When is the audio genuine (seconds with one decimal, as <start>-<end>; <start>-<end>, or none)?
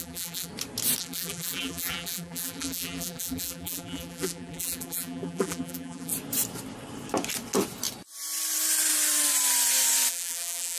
0.5-1.0; 6.1-10.1